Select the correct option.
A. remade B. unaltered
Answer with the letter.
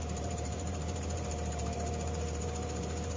A